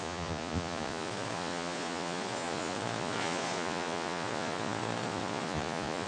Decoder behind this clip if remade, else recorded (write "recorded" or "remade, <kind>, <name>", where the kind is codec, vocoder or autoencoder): remade, vocoder, Vocos